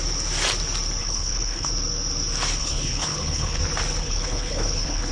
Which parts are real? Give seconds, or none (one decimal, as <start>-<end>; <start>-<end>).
0.0-1.0; 1.7-2.6; 3.6-4.0